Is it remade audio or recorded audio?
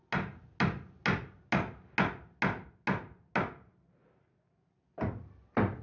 recorded